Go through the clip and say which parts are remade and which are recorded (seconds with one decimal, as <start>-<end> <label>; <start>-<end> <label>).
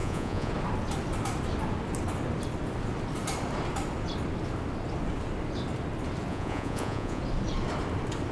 0.0-0.5 remade; 0.5-6.3 recorded; 6.3-7.2 remade; 7.2-8.3 recorded